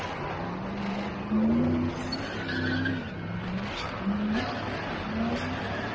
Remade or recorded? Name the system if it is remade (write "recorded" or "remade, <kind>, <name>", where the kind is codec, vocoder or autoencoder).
recorded